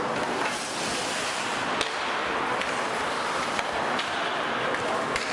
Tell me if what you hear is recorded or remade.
recorded